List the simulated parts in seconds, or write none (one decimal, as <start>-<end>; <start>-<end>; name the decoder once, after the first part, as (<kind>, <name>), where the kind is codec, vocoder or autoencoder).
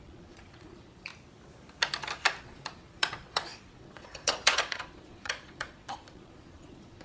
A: 0.0-1.1 (vocoder, Vocos); 2.4-7.0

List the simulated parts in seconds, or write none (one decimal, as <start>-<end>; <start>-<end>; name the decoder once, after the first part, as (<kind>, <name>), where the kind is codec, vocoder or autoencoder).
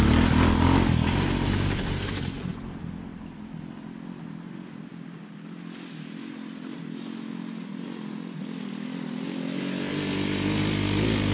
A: none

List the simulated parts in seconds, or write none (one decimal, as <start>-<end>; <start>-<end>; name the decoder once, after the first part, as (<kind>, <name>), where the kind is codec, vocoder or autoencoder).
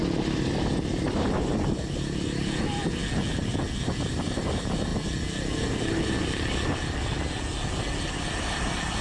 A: 0.0-2.8 (vocoder, BigVGAN v2); 3.8-4.9; 8.0-9.0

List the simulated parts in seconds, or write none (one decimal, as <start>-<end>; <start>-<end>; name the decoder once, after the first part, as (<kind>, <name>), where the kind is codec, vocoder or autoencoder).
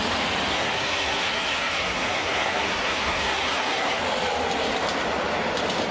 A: 0.5-4.0 (codec, SNAC)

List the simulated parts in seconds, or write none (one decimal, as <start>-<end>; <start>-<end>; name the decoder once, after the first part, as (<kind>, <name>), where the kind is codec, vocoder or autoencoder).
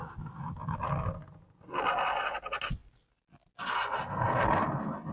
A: 0.0-0.8 (autoencoder, DAC-VAE)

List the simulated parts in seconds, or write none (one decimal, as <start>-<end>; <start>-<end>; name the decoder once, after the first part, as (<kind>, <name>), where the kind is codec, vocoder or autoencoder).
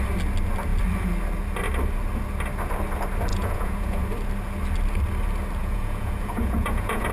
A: 3.3-4.0 (vocoder, Vocos); 5.6-7.1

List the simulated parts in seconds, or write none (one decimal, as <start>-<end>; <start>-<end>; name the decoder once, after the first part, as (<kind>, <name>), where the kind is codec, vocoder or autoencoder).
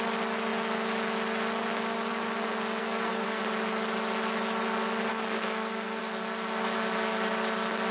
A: 2.8-3.4 (codec, SNAC); 5.1-6.0